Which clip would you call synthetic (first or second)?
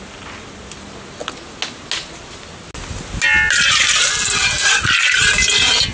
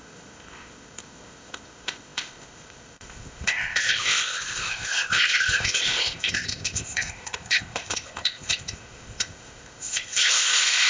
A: second